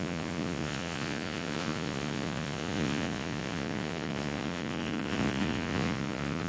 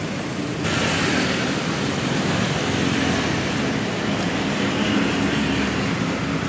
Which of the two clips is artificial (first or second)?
first